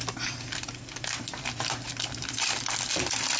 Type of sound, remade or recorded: recorded